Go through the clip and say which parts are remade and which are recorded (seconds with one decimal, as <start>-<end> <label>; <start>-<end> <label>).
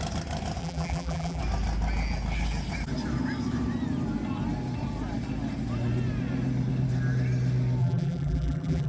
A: 0.0-0.6 recorded; 0.6-1.4 remade; 1.4-7.8 recorded; 7.8-8.9 remade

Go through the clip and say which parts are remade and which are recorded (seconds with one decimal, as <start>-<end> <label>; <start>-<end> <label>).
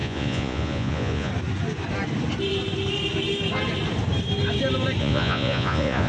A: 0.0-1.3 remade; 1.3-5.0 recorded; 5.0-6.1 remade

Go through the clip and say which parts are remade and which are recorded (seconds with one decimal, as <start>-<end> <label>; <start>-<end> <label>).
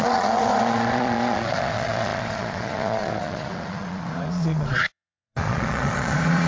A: 0.0-6.5 remade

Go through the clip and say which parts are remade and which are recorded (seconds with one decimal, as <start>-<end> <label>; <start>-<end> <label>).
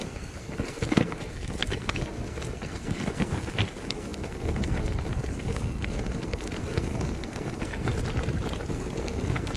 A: 0.0-7.9 remade; 7.9-8.7 recorded; 8.7-9.6 remade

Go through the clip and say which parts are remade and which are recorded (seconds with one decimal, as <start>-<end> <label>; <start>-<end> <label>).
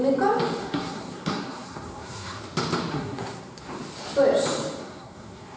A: 0.0-0.6 recorded; 0.6-2.4 remade; 2.4-2.9 recorded; 2.9-3.7 remade; 3.7-4.8 recorded; 4.8-5.6 remade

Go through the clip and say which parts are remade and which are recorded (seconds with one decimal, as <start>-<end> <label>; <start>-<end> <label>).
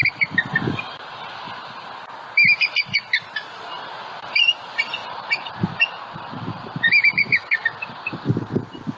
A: 0.0-5.0 recorded; 5.0-5.5 remade; 5.5-6.0 recorded; 6.0-8.5 remade; 8.5-9.0 recorded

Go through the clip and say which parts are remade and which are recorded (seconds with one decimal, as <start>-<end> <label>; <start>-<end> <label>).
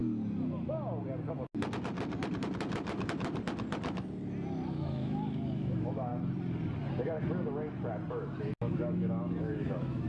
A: 0.0-4.7 recorded; 4.7-6.1 remade; 6.1-8.1 recorded; 8.1-10.1 remade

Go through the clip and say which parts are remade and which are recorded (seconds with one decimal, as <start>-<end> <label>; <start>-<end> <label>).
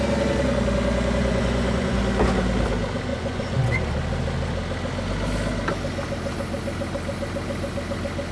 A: 0.0-1.2 recorded; 1.2-2.0 remade; 2.0-3.1 recorded; 3.1-3.8 remade; 3.8-8.3 recorded